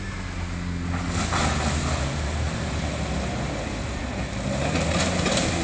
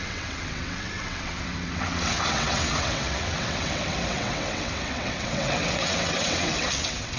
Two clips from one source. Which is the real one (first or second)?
first